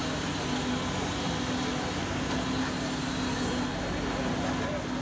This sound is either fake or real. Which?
real